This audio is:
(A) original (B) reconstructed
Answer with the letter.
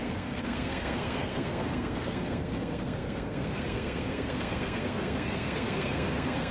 B